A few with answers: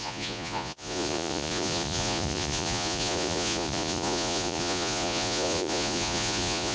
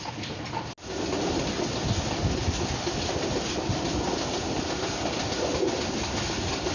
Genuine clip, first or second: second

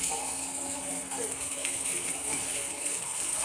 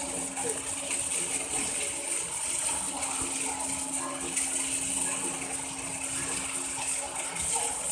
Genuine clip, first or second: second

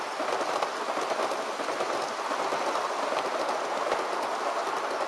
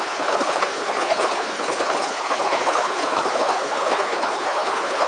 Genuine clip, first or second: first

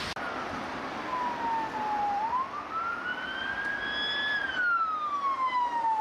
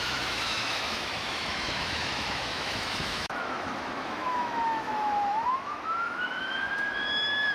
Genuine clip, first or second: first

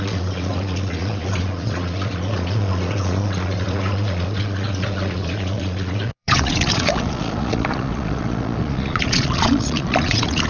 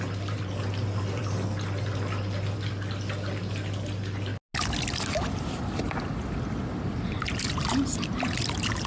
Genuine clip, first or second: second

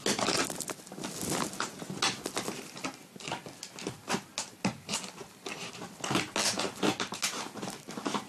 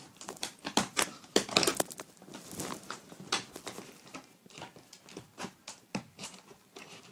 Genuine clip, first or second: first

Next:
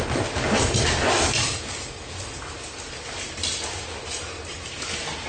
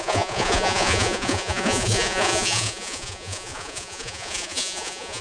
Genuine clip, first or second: first